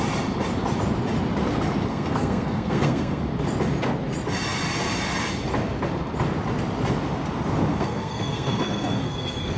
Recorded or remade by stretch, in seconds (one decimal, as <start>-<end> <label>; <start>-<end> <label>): 0.0-1.9 recorded; 1.9-3.2 remade; 3.2-7.7 recorded; 7.7-9.6 remade